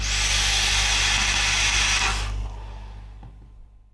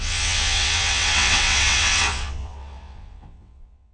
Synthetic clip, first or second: second